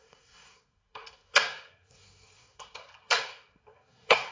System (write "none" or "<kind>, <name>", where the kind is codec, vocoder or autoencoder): codec, SNAC